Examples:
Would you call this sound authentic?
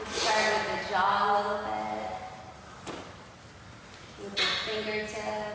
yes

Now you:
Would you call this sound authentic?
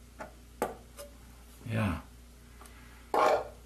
yes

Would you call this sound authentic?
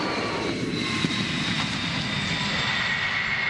yes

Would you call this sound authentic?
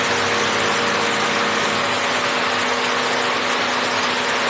yes